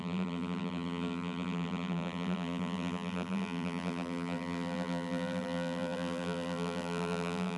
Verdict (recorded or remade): remade